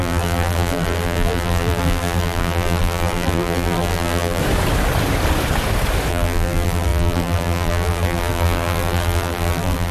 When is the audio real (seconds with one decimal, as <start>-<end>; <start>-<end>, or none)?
4.4-6.1